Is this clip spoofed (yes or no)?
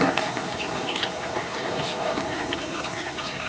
yes